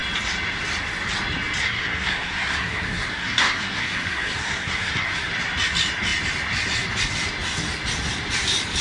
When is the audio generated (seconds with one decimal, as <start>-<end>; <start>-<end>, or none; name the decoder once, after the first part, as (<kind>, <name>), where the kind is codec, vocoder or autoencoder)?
1.6-5.3 (codec, SNAC)